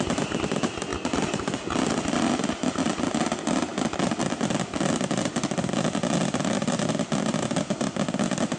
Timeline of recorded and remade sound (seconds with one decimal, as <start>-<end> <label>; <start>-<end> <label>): 0.0-8.6 recorded